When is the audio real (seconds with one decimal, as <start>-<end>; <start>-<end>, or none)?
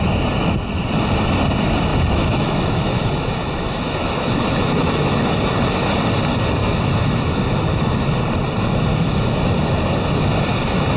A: 0.0-1.9; 5.9-6.6; 8.2-8.9; 9.4-11.0